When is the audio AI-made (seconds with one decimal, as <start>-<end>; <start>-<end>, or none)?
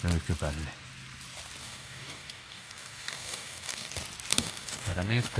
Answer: 1.6-3.9; 4.3-5.4